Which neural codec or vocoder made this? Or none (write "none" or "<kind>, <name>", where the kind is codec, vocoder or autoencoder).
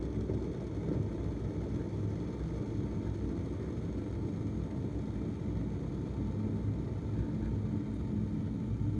none